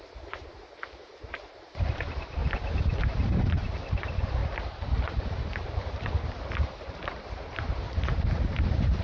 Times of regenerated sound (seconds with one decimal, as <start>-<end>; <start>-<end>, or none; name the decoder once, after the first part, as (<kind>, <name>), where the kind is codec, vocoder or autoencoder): 0.0-2.4 (vocoder, BigVGAN v2); 3.1-4.4; 5.3-9.0